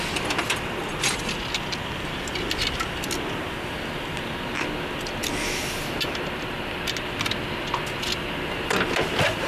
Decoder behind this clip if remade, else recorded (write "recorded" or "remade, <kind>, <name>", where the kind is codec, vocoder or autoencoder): recorded